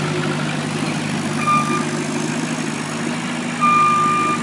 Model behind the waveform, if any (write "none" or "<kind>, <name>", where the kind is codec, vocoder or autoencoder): none